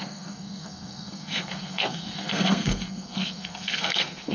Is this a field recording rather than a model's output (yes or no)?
no